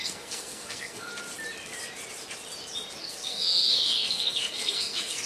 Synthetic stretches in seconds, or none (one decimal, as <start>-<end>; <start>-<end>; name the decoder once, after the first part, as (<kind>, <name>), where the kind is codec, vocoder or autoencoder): 0.0-1.1 (codec, SNAC); 3.0-5.3